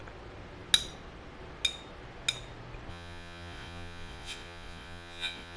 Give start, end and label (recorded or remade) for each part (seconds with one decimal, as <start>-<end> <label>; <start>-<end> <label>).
0.0-2.9 recorded; 2.9-5.6 remade